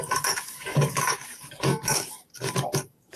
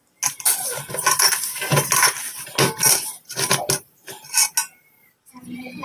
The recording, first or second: second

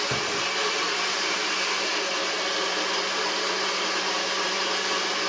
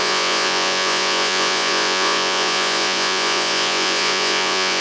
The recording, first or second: first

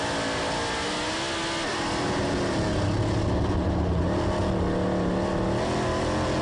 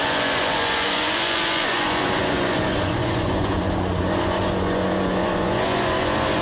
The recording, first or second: first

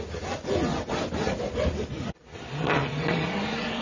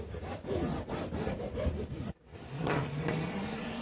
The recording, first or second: first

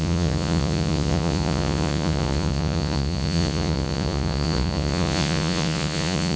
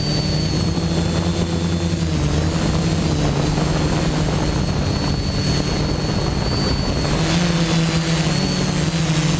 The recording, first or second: second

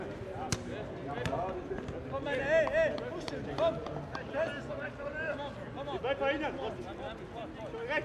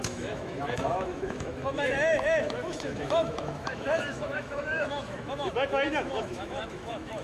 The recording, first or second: first